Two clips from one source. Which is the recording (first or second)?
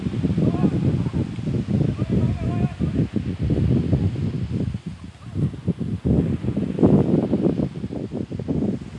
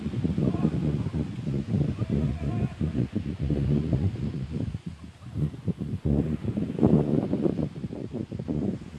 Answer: first